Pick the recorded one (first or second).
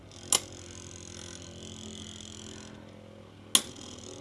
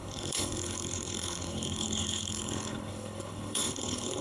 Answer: first